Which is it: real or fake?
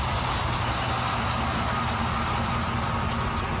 real